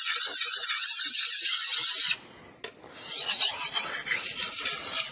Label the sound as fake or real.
real